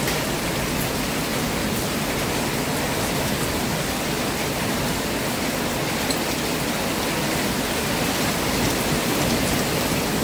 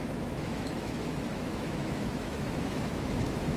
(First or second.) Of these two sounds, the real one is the first